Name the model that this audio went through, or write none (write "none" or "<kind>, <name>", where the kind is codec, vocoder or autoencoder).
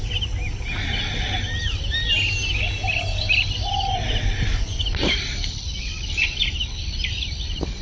none